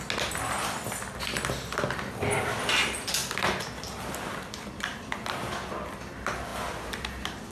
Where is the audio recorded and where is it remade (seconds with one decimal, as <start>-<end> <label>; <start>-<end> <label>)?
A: 0.0-7.5 recorded